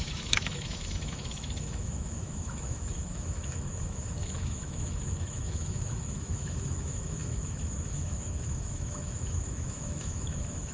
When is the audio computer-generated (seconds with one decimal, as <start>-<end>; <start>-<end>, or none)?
0.0-10.7